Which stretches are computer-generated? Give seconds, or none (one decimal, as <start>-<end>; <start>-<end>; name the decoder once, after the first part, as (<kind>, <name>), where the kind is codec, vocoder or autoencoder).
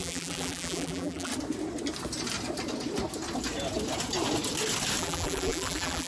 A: 0.0-1.3 (vocoder, BigVGAN v2); 5.0-6.1